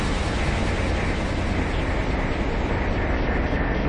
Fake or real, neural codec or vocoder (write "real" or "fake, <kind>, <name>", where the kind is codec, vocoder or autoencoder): real